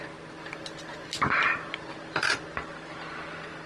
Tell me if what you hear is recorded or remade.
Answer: recorded